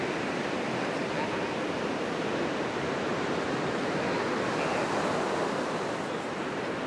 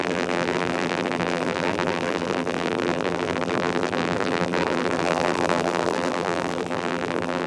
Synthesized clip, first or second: second